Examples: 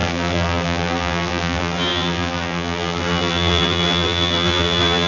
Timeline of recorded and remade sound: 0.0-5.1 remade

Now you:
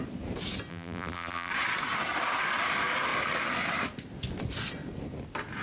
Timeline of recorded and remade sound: 0.0-0.7 recorded; 0.7-1.5 remade; 1.5-5.6 recorded

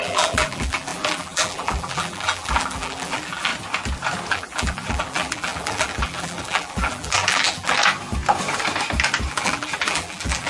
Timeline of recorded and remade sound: 0.0-3.5 remade; 3.5-4.3 recorded; 4.3-7.8 remade; 7.8-9.3 recorded; 9.3-10.5 remade

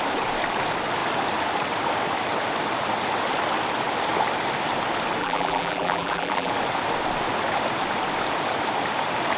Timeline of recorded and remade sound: 0.0-5.2 recorded; 5.2-6.5 remade; 6.5-9.4 recorded

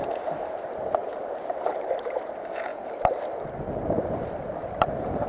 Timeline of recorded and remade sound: 0.0-2.7 remade; 2.7-3.7 recorded; 3.7-5.3 remade